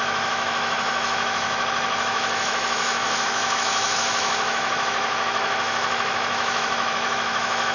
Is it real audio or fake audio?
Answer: fake